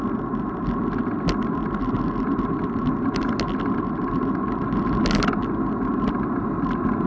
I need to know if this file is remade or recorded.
recorded